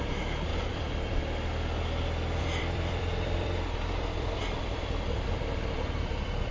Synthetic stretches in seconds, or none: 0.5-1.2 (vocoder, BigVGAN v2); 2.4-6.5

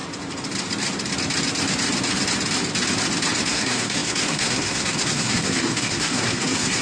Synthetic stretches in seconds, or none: 3.5-6.8 (codec, SNAC)

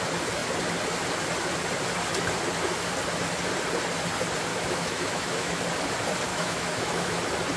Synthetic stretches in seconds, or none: 4.5-5.6 (autoencoder, DAC-VAE); 6.3-7.1

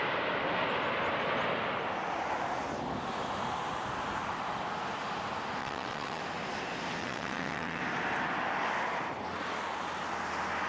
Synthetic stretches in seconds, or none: 5.6-6.2 (vocoder, WaveNeXt); 7.0-7.8

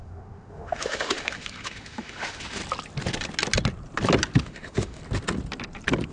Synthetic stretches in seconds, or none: 0.0-2.6 (autoencoder, DAC-VAE); 4.4-5.0